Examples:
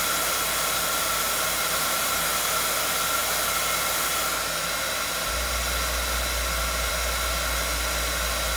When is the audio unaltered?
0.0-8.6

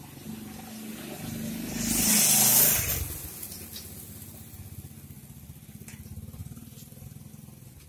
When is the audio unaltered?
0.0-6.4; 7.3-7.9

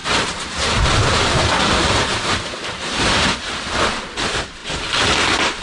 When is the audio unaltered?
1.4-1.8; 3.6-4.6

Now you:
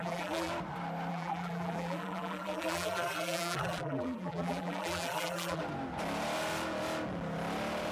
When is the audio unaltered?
0.5-1.1; 5.6-7.9

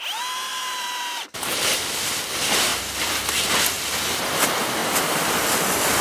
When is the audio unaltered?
0.0-0.5; 1.8-6.0

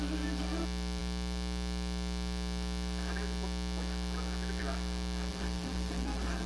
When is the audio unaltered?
0.0-5.3

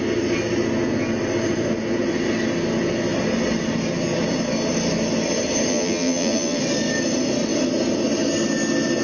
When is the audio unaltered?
0.0-5.7; 6.6-9.0